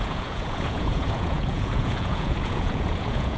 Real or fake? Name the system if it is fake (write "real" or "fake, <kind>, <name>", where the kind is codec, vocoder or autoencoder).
fake, vocoder, Vocos